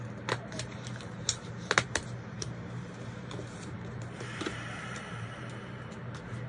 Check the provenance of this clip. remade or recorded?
remade